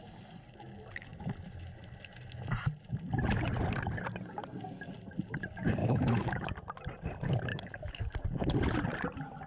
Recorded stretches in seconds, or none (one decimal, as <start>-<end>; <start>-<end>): 0.0-5.8; 6.5-7.5; 8.1-9.5